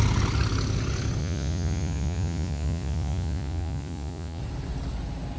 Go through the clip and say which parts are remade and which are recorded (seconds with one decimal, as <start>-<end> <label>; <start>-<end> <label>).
0.0-1.2 recorded; 1.2-4.4 remade; 4.4-5.4 recorded